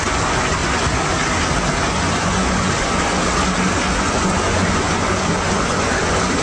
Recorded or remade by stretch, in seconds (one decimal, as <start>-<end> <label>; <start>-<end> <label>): 0.0-0.6 remade; 0.6-1.7 recorded; 1.7-3.2 remade; 3.2-3.9 recorded; 3.9-6.4 remade